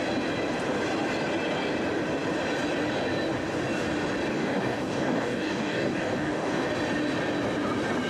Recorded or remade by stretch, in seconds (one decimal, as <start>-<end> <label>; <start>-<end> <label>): 0.0-4.3 recorded; 4.3-6.7 remade; 6.7-8.1 recorded